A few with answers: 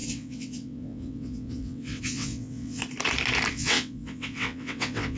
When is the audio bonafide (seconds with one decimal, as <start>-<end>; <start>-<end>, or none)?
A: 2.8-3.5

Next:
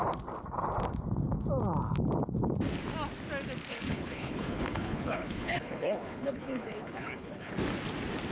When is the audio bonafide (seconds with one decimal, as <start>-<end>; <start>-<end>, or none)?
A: 0.0-3.7; 7.5-8.3

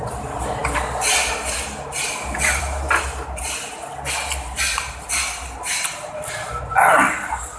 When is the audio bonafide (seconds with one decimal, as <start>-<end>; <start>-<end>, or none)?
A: 0.0-7.6